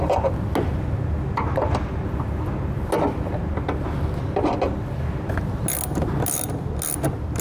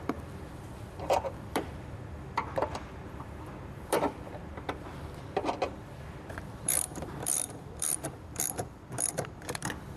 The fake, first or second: second